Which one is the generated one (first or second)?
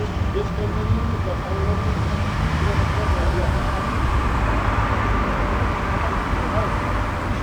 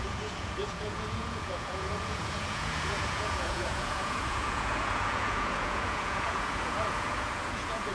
second